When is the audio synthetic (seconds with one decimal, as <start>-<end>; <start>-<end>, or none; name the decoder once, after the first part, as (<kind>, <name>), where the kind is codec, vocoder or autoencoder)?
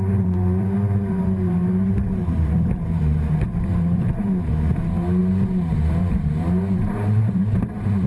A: 0.0-8.1 (vocoder, BigVGAN v2)